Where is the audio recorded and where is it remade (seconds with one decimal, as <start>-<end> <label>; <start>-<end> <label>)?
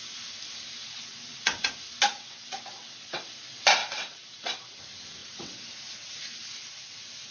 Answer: 0.0-0.8 recorded; 0.8-1.7 remade; 1.7-2.1 recorded; 2.1-3.3 remade; 3.3-3.8 recorded; 3.8-4.8 remade; 4.8-5.2 recorded; 5.2-5.7 remade; 5.7-7.3 recorded